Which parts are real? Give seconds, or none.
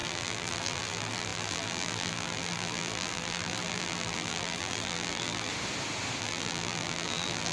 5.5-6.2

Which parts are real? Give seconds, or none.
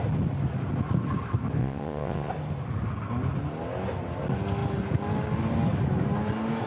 0.0-1.6; 2.3-6.7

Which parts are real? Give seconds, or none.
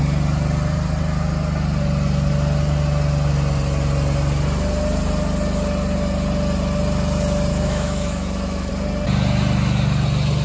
0.0-7.5; 8.7-10.4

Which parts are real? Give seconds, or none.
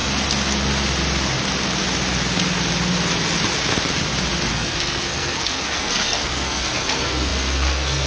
0.0-4.5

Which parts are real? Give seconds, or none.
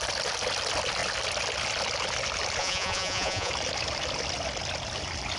0.0-2.6; 3.5-5.4